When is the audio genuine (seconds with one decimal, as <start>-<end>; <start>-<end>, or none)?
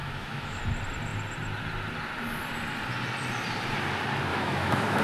0.6-4.3